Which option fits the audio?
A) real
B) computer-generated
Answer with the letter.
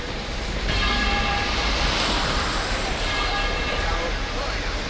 B